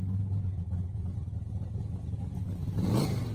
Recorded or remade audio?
recorded